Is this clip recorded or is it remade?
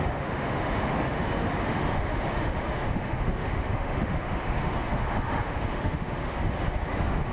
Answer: remade